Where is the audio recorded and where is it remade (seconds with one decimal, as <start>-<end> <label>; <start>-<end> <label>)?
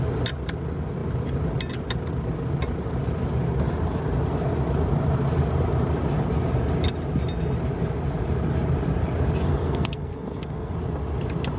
0.0-9.5 recorded; 9.5-10.7 remade; 10.7-11.6 recorded